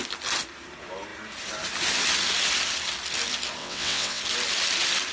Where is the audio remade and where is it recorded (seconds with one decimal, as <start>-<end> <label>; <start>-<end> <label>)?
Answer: 0.0-3.6 recorded; 3.6-4.2 remade; 4.2-5.1 recorded